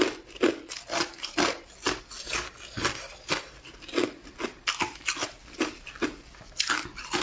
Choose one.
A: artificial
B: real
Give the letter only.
B